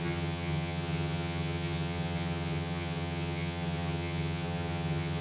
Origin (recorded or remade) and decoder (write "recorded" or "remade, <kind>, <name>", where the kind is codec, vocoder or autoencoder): remade, vocoder, HiFi-GAN